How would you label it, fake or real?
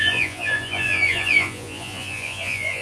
fake